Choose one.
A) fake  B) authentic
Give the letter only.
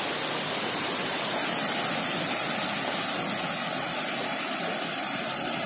B